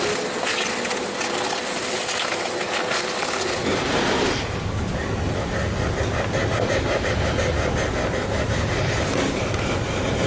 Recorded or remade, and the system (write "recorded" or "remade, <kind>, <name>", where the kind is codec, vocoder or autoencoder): recorded